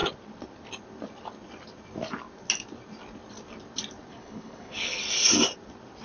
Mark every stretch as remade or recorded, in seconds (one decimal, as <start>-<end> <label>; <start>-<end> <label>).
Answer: 0.0-4.1 recorded; 4.1-5.0 remade; 5.0-6.0 recorded